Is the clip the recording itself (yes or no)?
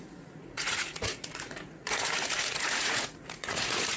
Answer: no